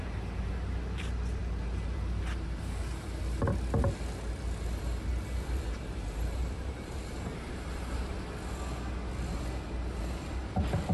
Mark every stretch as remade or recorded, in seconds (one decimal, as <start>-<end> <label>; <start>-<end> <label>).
0.0-1.4 recorded; 1.4-3.2 remade; 3.2-5.1 recorded; 5.1-8.1 remade; 8.1-10.9 recorded